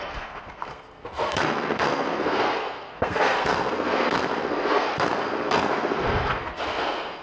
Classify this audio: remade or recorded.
remade